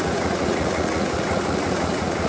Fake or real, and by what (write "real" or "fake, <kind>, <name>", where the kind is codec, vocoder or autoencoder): fake, vocoder, Vocos